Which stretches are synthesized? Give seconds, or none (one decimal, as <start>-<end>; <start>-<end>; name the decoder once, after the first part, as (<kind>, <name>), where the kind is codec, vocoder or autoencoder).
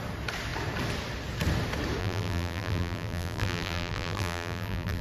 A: 2.0-5.0 (vocoder, BigVGAN v2)